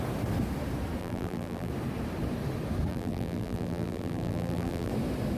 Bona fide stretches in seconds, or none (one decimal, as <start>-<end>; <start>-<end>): 0.0-1.0; 1.7-2.9; 4.9-5.4